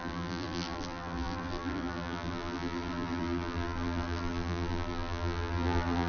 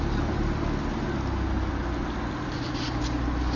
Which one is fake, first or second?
first